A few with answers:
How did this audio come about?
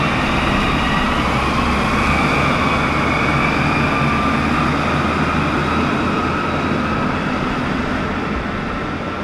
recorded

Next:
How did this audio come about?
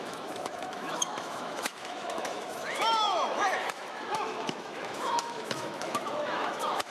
remade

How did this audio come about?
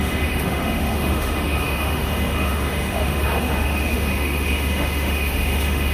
remade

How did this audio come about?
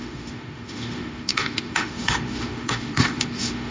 remade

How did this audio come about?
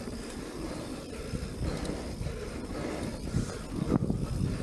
recorded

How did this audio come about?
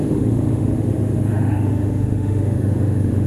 remade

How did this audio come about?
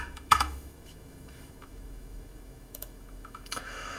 remade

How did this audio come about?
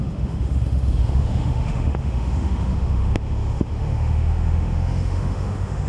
remade